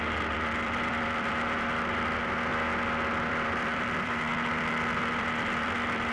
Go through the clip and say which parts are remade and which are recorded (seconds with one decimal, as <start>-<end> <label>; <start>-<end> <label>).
0.0-2.5 remade; 2.5-3.3 recorded; 3.3-4.3 remade; 4.3-5.1 recorded; 5.1-6.1 remade